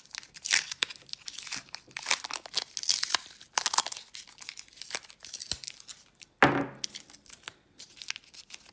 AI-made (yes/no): no